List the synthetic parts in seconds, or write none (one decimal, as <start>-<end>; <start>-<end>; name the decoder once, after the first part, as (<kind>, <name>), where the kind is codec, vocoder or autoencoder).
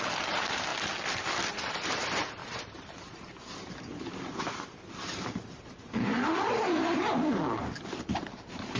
0.0-0.7 (vocoder, BigVGAN v2); 1.5-6.1; 7.6-8.8